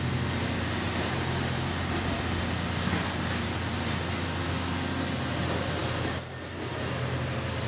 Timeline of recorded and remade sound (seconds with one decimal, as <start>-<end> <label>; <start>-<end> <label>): 0.0-7.7 recorded